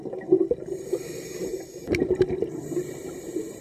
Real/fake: fake